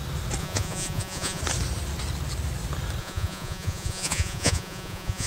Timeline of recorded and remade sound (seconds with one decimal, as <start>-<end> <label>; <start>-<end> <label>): 0.0-0.4 recorded; 0.4-1.4 remade; 1.4-3.0 recorded; 3.0-5.3 remade